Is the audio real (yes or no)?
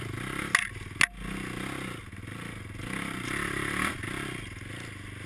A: yes